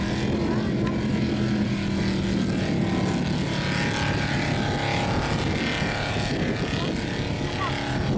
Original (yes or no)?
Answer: yes